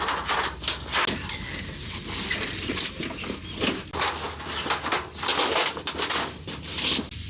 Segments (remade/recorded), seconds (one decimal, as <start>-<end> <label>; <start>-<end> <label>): 0.0-7.3 recorded